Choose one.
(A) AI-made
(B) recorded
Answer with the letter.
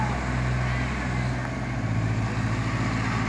B